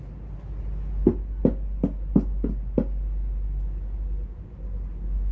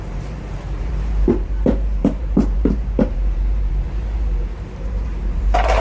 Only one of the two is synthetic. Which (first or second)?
second